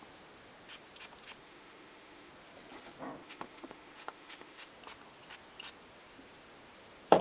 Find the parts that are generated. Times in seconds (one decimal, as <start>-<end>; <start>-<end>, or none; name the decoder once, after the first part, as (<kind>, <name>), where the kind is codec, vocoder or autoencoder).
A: 1.4-2.3 (autoencoder, DAC-VAE); 3.2-4.7